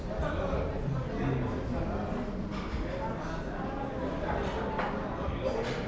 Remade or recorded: recorded